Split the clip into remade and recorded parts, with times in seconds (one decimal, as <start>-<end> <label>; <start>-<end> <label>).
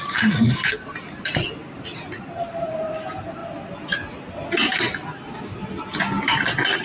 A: 0.0-1.6 recorded; 1.6-2.9 remade; 2.9-6.8 recorded